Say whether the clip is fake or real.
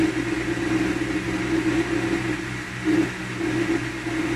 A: real